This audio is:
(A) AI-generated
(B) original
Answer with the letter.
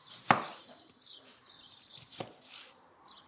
B